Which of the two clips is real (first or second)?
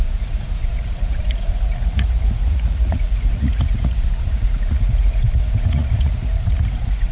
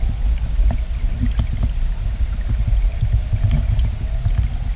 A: second